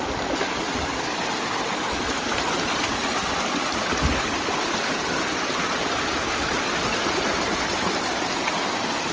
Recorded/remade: recorded